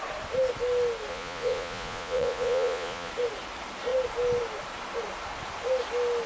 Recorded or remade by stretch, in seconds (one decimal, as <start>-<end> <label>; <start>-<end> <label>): 0.0-1.1 recorded; 1.1-3.1 remade; 3.1-6.3 recorded